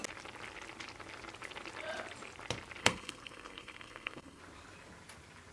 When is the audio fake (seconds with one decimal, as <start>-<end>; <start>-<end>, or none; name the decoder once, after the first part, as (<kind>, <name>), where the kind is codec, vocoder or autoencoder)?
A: 2.8-4.4 (codec, SNAC)